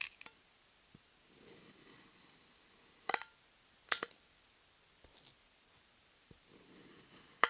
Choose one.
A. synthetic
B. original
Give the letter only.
B